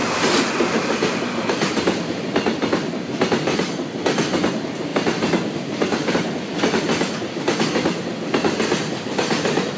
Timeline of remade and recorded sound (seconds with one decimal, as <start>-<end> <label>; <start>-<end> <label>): 0.0-9.8 recorded